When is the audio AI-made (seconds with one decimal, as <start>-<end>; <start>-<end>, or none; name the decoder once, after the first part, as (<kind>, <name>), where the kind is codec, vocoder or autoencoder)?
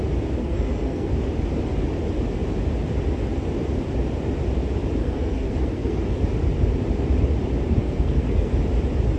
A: 0.4-1.1 (codec, SNAC); 5.0-6.0; 7.8-8.5